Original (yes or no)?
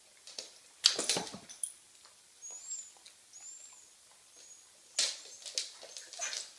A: yes